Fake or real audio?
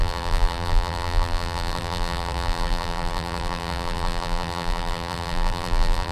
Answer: fake